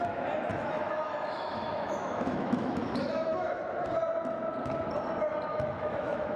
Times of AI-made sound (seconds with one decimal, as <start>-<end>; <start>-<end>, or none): 0.5-3.6; 5.5-6.4